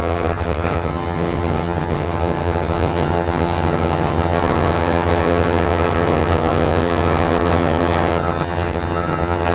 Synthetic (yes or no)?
yes